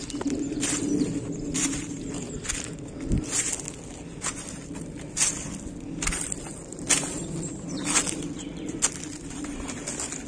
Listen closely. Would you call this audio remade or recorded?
recorded